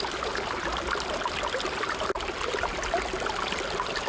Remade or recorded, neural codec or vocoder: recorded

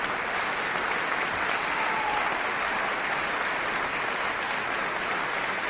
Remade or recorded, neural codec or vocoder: recorded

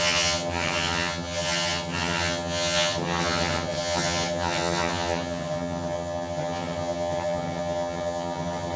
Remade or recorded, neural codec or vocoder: remade, vocoder, HiFi-GAN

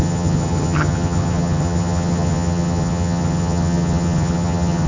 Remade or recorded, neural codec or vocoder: remade, vocoder, HiFi-GAN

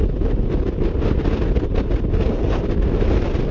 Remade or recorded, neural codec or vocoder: recorded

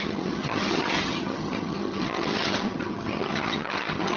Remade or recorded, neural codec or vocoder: remade, vocoder, HiFi-GAN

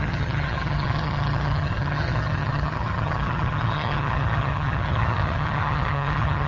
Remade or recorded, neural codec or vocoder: remade, vocoder, HiFi-GAN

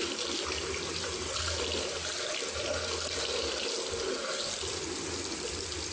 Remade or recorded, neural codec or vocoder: recorded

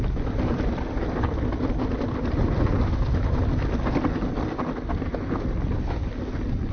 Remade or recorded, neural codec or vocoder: recorded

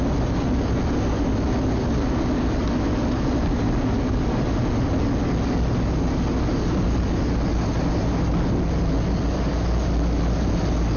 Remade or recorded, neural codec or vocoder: recorded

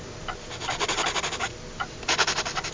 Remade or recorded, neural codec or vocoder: recorded